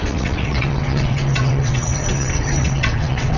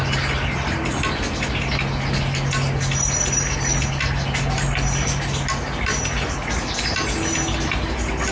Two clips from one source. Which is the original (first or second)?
second